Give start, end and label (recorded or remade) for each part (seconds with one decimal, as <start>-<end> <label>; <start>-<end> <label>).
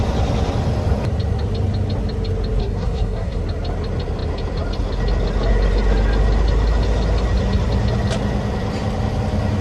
0.0-2.6 recorded; 2.6-3.4 remade; 3.4-9.6 recorded